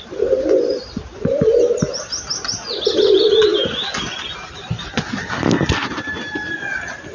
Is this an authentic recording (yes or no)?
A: yes